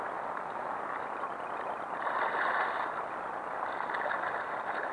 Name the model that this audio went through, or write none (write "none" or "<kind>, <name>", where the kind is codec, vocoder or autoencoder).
none